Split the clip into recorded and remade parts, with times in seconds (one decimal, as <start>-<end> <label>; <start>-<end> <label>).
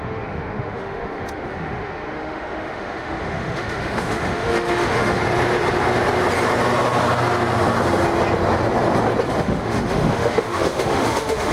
0.0-5.2 remade; 5.2-9.4 recorded; 9.4-11.5 remade